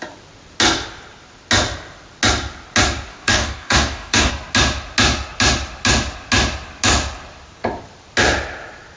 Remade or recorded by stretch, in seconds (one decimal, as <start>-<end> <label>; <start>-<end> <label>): 0.0-3.1 recorded; 3.1-4.3 remade; 4.3-9.0 recorded